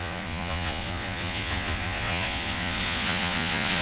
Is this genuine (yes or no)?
no